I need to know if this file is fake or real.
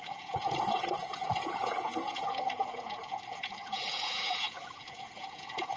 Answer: fake